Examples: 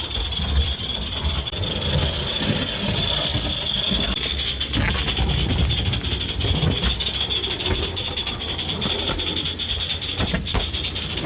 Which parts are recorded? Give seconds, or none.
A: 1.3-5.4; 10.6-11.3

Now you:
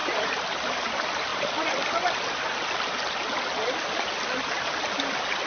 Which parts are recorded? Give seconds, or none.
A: 0.9-5.5

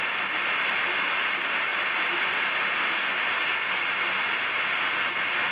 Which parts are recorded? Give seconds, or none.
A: 0.0-5.5